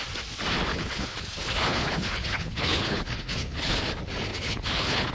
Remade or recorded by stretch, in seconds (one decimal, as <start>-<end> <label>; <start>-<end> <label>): 0.0-0.7 recorded; 0.7-3.8 remade; 3.8-4.3 recorded; 4.3-5.1 remade